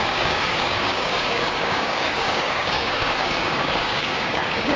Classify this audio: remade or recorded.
remade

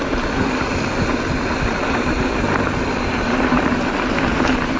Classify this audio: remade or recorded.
recorded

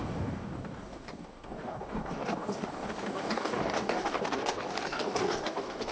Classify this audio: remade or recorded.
remade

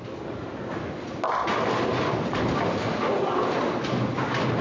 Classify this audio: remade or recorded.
recorded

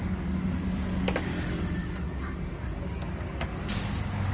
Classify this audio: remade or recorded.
remade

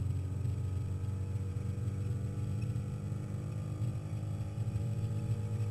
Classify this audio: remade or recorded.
recorded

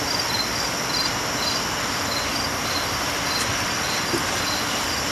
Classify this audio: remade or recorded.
recorded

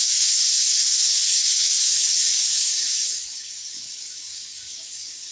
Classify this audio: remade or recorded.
remade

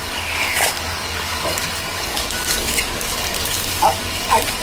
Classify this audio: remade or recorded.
remade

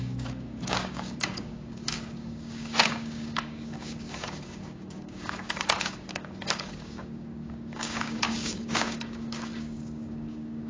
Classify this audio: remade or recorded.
remade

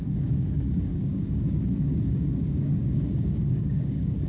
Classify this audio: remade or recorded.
remade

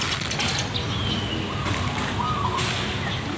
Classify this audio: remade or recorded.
recorded